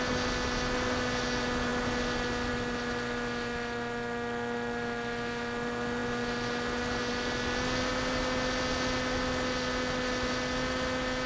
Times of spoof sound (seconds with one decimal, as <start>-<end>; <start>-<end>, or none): none